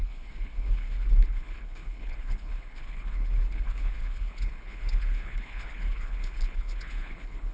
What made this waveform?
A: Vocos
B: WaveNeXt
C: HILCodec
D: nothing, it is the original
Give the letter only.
C